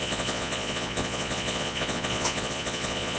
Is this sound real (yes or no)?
no